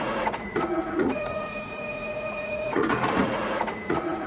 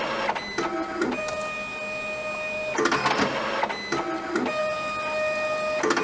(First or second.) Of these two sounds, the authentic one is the second